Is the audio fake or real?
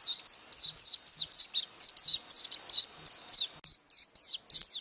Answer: real